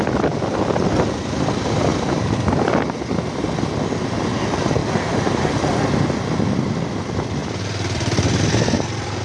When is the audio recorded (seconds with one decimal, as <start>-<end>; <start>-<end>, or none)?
0.0-1.9; 3.1-4.8; 6.0-7.4